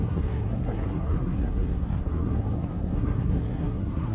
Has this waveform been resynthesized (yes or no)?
yes